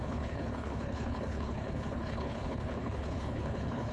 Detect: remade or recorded remade